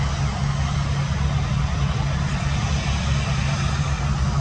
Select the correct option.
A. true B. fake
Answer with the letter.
A